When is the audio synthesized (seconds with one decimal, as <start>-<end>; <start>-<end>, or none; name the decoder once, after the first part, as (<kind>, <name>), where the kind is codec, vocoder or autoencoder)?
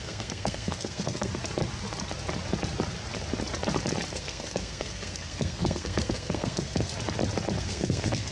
0.0-1.3 (codec, SNAC); 4.1-6.9; 7.6-8.3